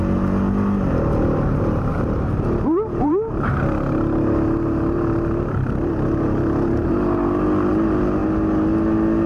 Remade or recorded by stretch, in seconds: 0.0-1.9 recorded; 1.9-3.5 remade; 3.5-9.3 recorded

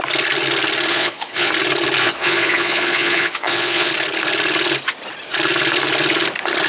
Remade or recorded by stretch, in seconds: 0.0-0.9 recorded; 0.9-1.5 remade; 1.5-2.0 recorded; 2.0-3.9 remade; 3.9-6.7 recorded